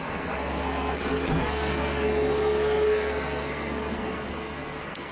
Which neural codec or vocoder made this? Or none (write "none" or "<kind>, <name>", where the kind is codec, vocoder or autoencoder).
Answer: codec, SNAC